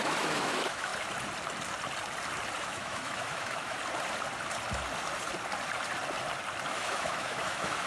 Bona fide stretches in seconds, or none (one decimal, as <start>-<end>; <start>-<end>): 0.9-2.6; 3.8-6.7